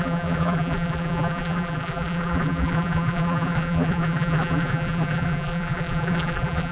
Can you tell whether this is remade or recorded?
remade